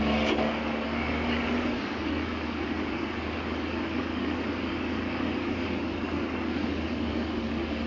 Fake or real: fake